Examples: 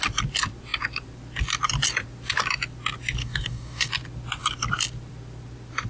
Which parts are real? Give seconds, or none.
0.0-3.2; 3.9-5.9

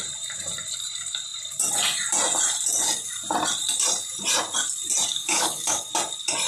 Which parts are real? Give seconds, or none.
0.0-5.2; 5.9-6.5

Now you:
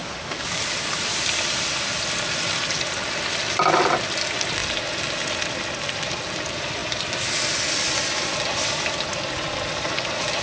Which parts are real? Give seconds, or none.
0.6-10.4

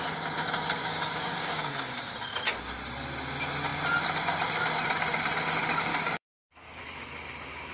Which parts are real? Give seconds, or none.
0.0-0.8; 2.1-5.9; 6.8-7.7